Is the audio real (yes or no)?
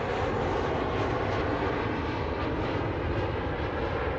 yes